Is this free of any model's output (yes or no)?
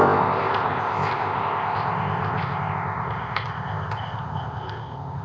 no